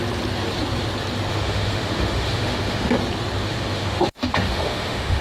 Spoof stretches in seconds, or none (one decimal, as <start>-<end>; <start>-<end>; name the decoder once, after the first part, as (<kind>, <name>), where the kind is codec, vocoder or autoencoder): 1.3-2.9 (autoencoder, DAC-VAE); 3.4-5.2